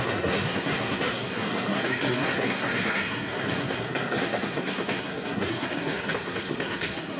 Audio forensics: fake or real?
fake